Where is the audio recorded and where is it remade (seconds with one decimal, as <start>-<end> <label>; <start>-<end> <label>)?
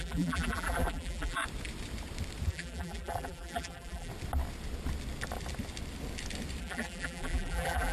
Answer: 0.0-1.4 remade; 1.4-2.5 recorded; 2.5-4.1 remade; 4.1-6.6 recorded; 6.6-7.9 remade